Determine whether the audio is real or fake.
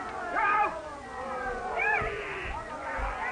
fake